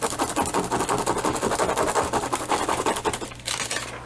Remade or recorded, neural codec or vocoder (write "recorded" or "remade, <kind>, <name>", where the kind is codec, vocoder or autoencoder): recorded